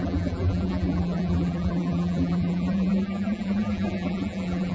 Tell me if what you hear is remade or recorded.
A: remade